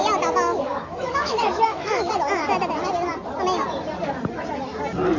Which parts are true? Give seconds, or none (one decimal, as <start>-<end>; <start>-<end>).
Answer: 0.0-0.5; 2.1-5.2